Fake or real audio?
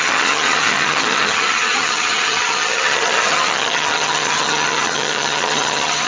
fake